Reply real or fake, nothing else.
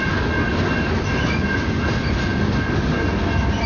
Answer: real